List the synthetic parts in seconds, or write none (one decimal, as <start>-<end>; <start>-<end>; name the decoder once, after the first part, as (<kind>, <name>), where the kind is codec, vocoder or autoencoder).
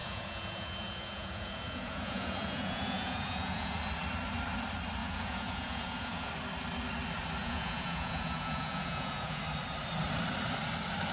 0.0-3.8 (vocoder, Vocos); 5.0-6.3; 7.4-9.4